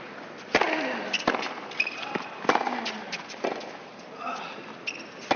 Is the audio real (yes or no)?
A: yes